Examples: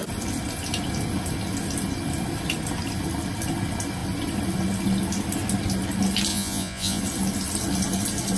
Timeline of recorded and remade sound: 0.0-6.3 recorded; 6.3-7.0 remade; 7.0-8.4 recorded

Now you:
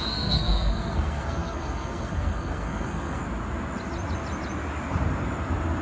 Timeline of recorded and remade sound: 0.0-3.2 remade; 3.2-5.8 recorded

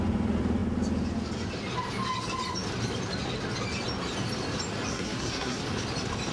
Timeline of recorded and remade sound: 0.0-4.9 recorded; 4.9-5.6 remade; 5.6-6.3 recorded